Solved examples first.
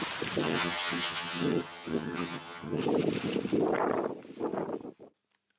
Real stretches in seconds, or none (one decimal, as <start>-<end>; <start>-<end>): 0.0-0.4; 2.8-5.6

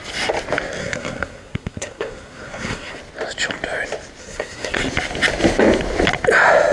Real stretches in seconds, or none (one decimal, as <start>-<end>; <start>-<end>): 0.0-0.8; 3.0-4.2; 4.8-6.7

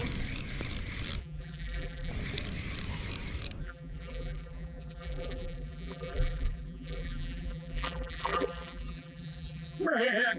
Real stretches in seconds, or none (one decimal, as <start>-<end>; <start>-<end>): 0.0-1.2; 2.1-3.6